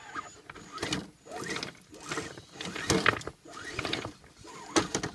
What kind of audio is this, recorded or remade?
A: recorded